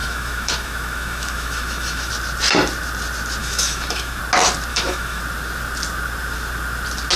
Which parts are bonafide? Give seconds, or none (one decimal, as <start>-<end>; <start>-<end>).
2.1-3.4; 4.2-4.7; 5.2-7.2